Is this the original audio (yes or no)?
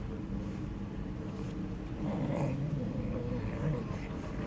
no